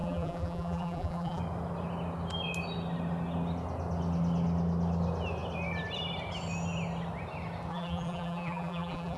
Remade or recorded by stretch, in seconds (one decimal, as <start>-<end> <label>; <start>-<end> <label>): 0.0-1.4 remade; 1.4-7.7 recorded; 7.7-9.2 remade